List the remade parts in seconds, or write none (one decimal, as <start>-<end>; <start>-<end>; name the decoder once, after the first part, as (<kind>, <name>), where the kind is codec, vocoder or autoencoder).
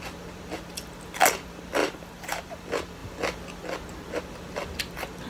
1.8-2.5 (vocoder, BigVGAN v2)